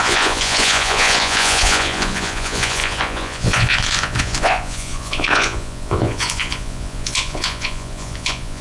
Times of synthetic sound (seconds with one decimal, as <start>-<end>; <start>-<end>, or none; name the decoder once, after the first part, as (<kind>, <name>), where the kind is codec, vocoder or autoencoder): 0.0-8.6 (vocoder, Vocos)